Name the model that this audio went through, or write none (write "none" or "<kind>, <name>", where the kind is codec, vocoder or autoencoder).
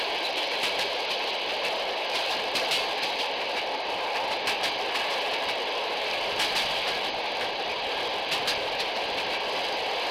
none